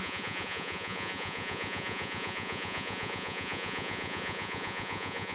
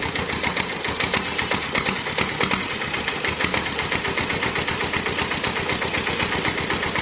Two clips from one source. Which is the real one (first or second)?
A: second